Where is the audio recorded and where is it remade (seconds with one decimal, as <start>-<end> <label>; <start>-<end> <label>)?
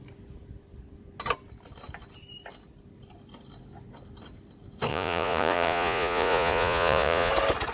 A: 0.0-4.9 recorded; 4.9-7.3 remade; 7.3-7.7 recorded